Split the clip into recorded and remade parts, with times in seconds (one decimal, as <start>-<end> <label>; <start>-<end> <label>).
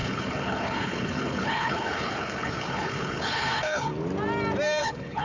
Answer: 0.0-3.9 remade; 3.9-4.8 recorded; 4.8-5.2 remade